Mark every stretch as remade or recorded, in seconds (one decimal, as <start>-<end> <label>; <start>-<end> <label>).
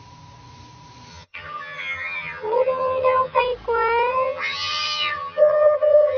0.0-1.1 recorded; 1.1-3.4 remade; 3.4-4.1 recorded; 4.1-6.2 remade